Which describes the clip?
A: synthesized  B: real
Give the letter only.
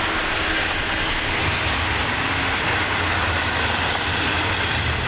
B